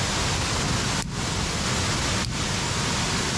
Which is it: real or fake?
real